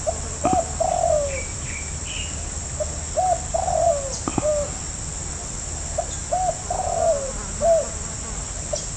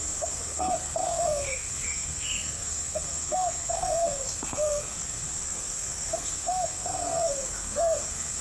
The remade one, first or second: second